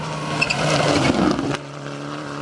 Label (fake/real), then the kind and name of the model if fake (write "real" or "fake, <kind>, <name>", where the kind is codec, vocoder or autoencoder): real